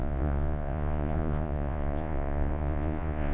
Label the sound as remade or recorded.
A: remade